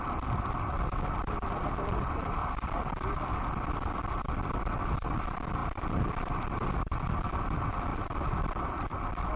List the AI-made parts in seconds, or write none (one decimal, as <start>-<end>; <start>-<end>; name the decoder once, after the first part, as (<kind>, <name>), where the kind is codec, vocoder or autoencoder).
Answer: 2.4-3.3 (vocoder, BigVGAN v2); 5.6-6.1; 7.9-8.9